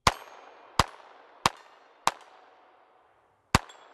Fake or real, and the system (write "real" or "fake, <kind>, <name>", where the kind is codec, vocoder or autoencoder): real